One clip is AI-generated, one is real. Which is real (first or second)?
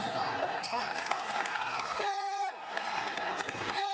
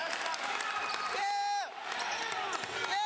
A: second